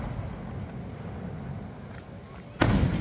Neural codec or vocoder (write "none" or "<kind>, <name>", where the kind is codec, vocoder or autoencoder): none